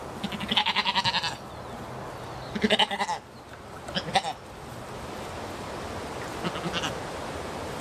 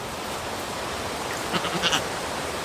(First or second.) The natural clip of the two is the first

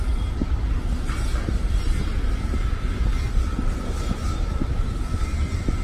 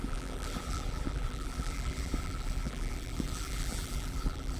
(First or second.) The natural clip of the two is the first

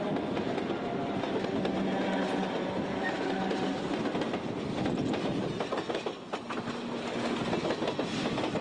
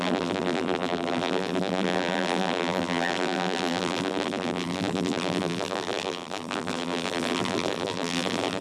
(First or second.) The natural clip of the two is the first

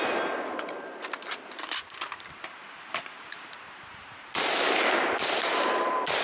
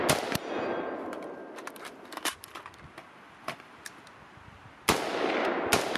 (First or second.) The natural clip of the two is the second